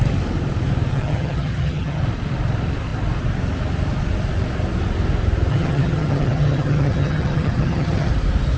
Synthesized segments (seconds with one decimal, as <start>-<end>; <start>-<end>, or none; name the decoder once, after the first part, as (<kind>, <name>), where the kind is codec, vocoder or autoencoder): 0.9-2.0 (vocoder, HiFi-GAN); 5.5-8.1